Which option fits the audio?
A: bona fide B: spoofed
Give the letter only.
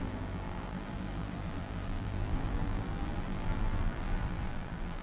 B